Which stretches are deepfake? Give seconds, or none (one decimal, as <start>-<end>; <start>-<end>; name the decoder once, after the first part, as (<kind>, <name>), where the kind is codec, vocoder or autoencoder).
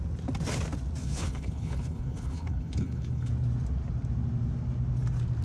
1.0-3.3 (codec, HILCodec)